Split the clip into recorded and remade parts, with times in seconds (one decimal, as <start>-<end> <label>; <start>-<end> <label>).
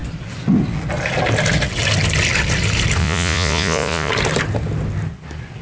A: 0.0-3.0 recorded; 3.0-4.1 remade; 4.1-5.6 recorded